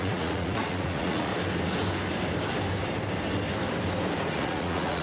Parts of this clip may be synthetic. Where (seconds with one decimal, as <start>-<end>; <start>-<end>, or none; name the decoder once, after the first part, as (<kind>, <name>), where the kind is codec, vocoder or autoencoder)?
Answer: 0.0-1.3 (vocoder, Vocos); 4.3-5.0